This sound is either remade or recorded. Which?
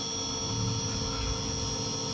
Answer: recorded